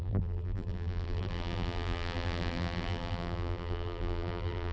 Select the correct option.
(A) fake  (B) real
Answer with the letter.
A